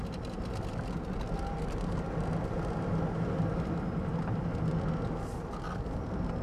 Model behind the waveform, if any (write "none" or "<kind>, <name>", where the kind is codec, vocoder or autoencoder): none